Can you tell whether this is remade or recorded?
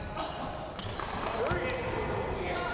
recorded